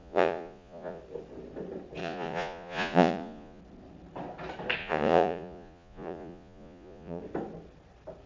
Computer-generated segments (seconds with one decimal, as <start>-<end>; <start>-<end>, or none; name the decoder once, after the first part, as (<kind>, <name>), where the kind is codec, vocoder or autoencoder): 0.0-1.0 (vocoder, Vocos); 2.0-3.6; 4.8-7.2